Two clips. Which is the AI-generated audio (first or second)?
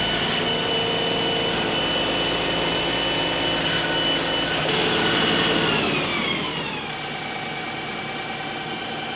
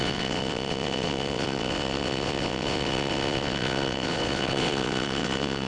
second